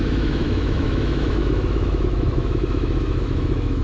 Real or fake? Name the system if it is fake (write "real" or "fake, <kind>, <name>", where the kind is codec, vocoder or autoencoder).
fake, autoencoder, DAC-VAE